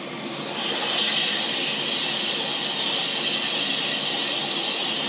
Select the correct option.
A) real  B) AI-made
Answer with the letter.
A